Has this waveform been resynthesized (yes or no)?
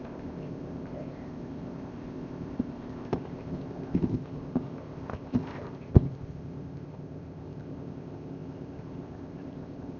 yes